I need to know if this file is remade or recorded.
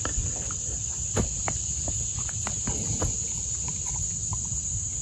recorded